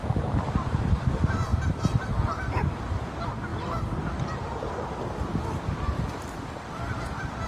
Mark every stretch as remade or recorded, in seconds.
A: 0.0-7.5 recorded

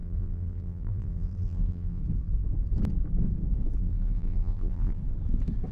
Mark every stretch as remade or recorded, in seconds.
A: 0.0-2.0 remade; 2.0-3.8 recorded; 3.8-5.0 remade; 5.0-5.7 recorded

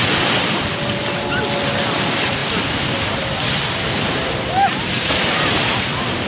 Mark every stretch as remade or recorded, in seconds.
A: 0.0-6.3 recorded

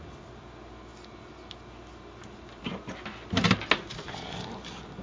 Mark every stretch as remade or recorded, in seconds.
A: 0.0-5.0 recorded

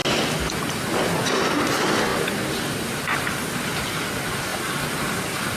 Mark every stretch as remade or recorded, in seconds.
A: 0.0-2.1 recorded; 2.1-2.7 remade; 2.7-5.6 recorded

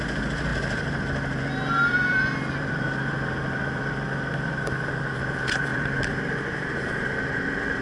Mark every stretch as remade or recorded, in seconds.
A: 0.0-7.8 remade

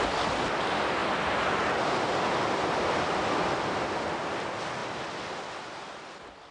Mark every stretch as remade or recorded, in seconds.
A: 0.0-6.5 recorded